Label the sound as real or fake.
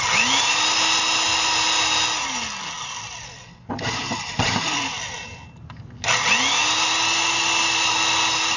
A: real